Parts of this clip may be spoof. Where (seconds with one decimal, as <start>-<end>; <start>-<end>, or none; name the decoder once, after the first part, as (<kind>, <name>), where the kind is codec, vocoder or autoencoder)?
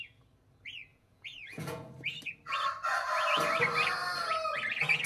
0.9-1.9 (vocoder, Vocos)